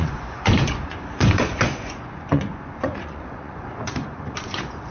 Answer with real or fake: fake